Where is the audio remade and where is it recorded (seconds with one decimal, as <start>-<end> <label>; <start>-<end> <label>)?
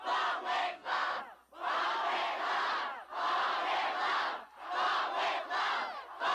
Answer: 0.0-0.6 recorded; 0.6-1.2 remade; 1.2-6.3 recorded